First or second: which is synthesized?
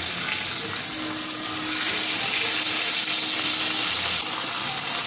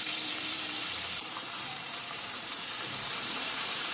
second